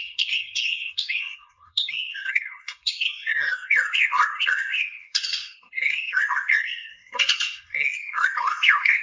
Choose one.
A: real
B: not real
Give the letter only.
B